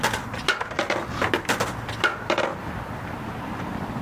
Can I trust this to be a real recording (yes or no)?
yes